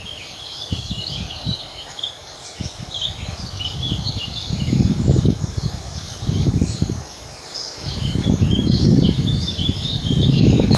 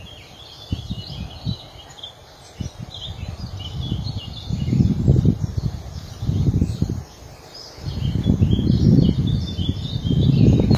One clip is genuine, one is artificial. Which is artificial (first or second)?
first